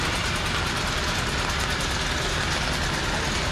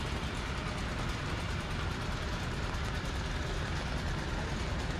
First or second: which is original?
first